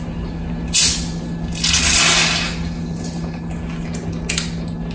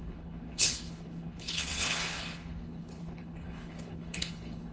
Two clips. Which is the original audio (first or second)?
first